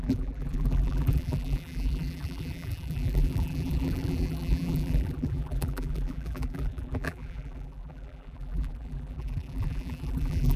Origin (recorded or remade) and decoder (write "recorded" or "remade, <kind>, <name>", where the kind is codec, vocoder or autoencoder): remade, vocoder, BigVGAN v2